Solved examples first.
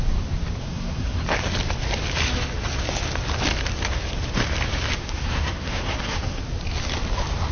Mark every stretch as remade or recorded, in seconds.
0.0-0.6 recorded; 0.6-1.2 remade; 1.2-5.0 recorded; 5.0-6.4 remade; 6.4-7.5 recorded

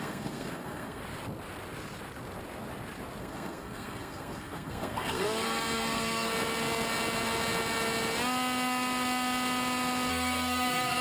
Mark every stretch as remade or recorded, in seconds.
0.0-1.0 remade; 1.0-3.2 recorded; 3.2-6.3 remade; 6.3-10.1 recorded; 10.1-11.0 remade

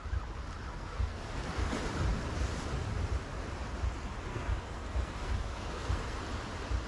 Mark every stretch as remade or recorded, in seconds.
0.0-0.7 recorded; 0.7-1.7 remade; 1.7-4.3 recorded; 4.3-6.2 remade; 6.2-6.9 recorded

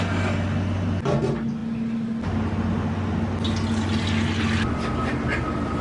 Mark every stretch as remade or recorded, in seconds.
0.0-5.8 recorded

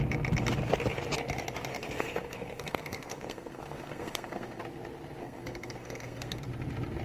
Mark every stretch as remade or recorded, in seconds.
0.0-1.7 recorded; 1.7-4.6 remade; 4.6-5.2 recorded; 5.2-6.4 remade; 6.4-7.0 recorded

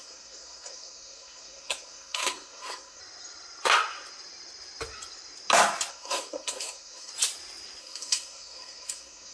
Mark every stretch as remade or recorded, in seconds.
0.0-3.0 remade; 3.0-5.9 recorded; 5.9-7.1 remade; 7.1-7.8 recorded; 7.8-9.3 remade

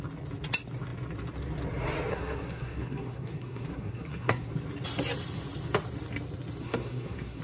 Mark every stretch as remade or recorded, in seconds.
0.0-2.1 recorded; 2.1-4.5 remade; 4.5-6.6 recorded; 6.6-7.4 remade